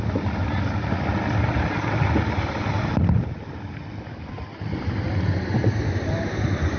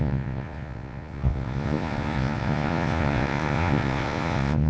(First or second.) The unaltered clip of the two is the first